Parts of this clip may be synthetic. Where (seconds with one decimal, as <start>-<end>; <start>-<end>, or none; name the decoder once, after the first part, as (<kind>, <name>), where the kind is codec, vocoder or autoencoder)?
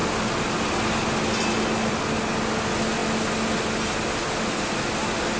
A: none